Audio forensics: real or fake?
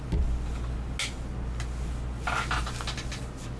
real